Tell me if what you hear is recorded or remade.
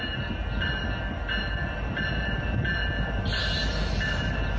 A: recorded